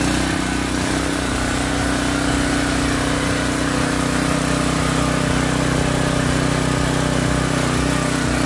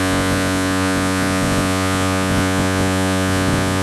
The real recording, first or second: first